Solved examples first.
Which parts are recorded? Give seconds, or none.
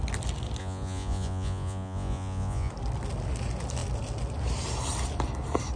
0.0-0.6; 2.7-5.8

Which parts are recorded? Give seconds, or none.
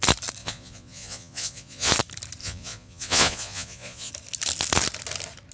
0.0-0.4; 1.9-2.4; 4.1-5.5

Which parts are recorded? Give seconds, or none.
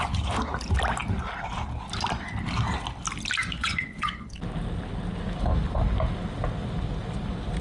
0.0-3.4; 4.3-7.6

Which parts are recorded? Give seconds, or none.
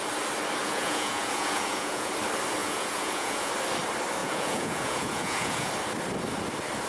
0.0-0.6; 2.1-2.6; 3.5-4.2; 5.7-6.9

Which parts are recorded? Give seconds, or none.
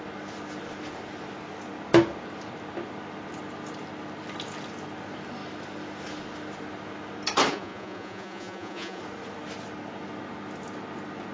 0.0-7.5; 9.0-11.3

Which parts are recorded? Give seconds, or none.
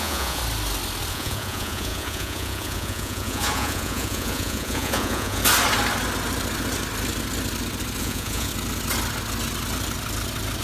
0.4-1.1; 5.4-8.0; 8.5-10.6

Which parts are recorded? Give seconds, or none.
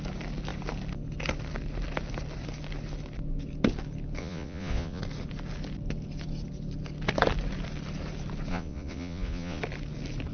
0.0-4.2; 5.0-8.5; 9.6-10.3